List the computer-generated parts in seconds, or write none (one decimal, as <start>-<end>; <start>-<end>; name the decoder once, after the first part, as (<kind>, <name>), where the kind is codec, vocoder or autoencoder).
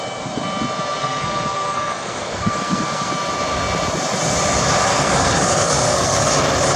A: 1.0-3.1 (codec, SNAC); 4.9-6.3